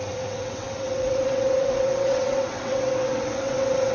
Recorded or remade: remade